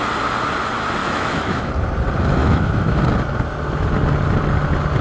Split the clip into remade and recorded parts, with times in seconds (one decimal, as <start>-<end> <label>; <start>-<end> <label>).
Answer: 0.0-1.0 recorded; 1.0-1.7 remade; 1.7-2.4 recorded; 2.4-3.0 remade; 3.0-5.0 recorded